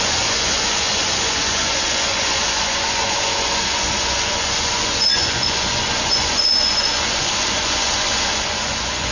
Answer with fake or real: fake